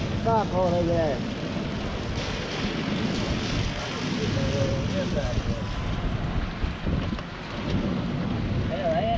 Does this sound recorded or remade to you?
recorded